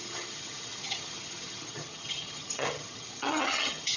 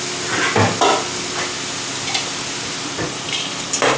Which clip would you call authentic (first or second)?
second